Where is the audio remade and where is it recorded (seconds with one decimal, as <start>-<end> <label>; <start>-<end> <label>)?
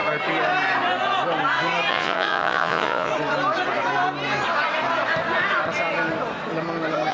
0.0-1.9 recorded; 1.9-3.1 remade; 3.1-7.1 recorded